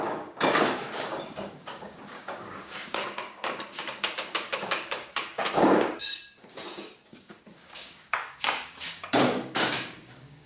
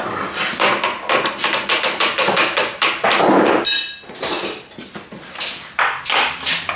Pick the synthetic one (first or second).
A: first